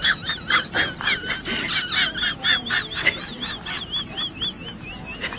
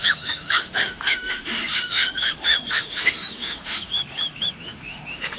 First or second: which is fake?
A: second